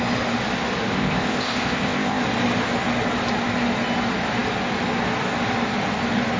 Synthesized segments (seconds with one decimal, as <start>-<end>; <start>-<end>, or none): 0.9-2.2